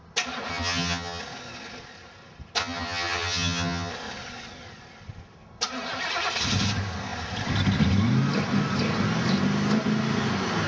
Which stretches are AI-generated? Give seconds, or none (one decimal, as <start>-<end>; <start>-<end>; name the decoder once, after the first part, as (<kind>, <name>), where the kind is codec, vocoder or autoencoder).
0.5-1.2 (vocoder, HiFi-GAN); 2.6-3.9